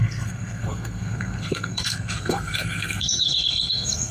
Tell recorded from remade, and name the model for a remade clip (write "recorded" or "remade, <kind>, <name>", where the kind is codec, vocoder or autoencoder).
remade, codec, SNAC